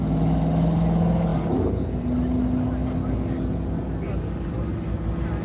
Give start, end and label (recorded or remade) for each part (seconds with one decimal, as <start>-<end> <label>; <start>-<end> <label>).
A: 0.0-5.4 recorded